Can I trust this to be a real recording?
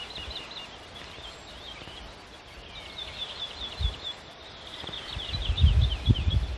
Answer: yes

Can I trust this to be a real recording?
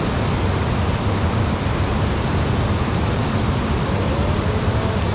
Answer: yes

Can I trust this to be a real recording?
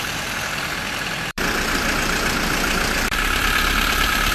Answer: no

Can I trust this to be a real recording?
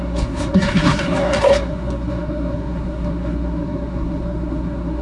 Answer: no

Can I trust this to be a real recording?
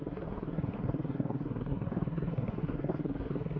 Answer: no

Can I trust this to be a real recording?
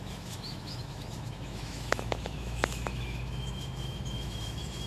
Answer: no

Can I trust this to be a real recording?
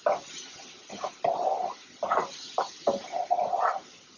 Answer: yes